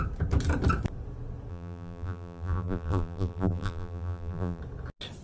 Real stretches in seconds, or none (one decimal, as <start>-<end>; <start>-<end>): 0.0-1.5; 4.6-5.2